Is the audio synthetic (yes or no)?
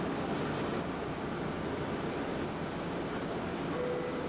no